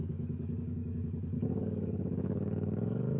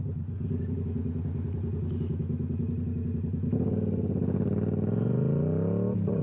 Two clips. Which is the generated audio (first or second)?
first